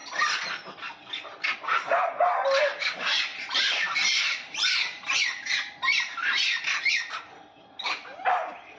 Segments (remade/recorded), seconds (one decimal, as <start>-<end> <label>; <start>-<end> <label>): 0.0-3.3 recorded; 3.3-6.6 remade; 6.6-8.8 recorded